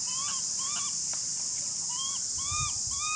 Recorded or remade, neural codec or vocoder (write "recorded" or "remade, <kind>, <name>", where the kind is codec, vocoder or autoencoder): remade, vocoder, BigVGAN v2